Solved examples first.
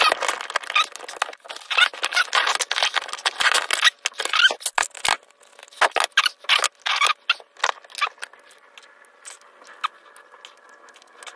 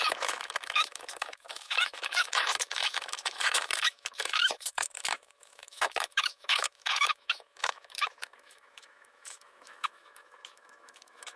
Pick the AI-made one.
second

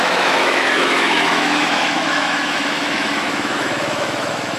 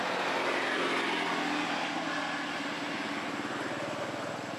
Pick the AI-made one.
first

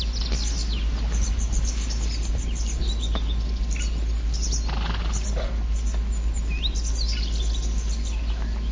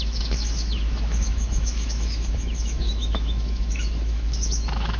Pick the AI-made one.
second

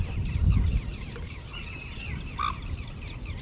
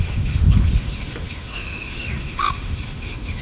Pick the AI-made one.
second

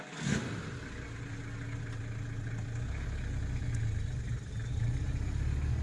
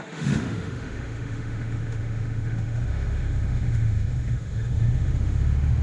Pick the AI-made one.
second